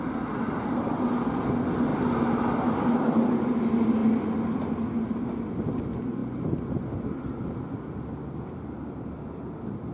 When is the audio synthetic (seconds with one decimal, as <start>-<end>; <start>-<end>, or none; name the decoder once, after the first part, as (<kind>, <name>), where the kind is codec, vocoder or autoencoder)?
none